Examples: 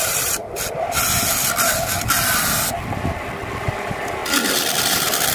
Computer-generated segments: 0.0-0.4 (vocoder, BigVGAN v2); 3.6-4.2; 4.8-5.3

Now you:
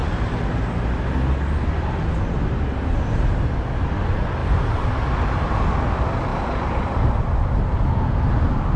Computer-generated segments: 4.4-4.9 (vocoder, BigVGAN v2)

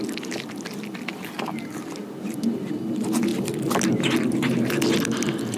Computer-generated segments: none

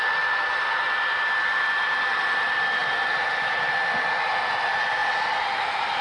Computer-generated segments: 0.0-5.0 (vocoder, BigVGAN v2); 5.6-6.0

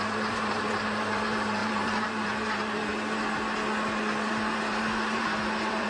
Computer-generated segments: 0.0-2.9 (vocoder, BigVGAN v2); 4.3-5.9

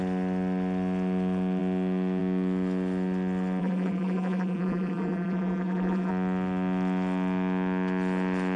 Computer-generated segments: 3.6-6.1 (vocoder, BigVGAN v2)